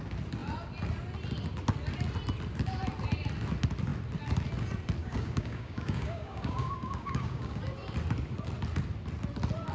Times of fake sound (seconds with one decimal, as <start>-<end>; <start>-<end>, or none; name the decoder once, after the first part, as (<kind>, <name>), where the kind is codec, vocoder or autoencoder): 5.0-7.6 (codec, DAC)